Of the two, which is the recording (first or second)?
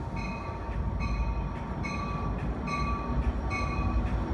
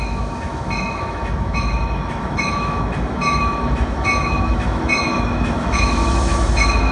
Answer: first